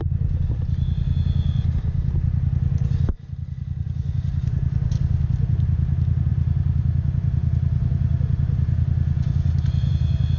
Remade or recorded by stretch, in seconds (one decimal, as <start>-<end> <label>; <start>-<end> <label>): 0.0-10.4 recorded